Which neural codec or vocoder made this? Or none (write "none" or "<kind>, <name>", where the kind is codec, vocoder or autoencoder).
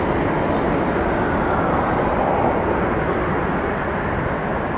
none